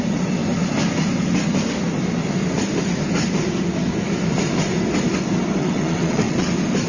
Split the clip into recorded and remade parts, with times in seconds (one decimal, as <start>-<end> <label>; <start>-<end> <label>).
0.0-5.6 recorded; 5.6-6.5 remade; 6.5-6.9 recorded